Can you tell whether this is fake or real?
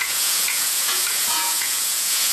fake